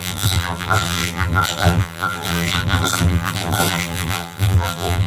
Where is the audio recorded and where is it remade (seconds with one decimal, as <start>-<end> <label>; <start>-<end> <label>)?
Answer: 0.0-5.1 remade